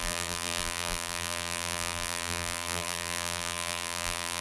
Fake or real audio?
fake